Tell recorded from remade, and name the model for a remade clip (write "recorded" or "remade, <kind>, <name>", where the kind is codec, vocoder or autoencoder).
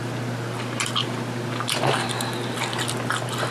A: recorded